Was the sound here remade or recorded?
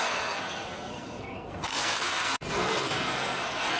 remade